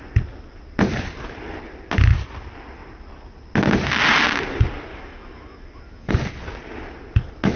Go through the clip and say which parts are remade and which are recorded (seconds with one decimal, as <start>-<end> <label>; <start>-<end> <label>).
0.0-4.9 recorded; 4.9-6.1 remade; 6.1-7.6 recorded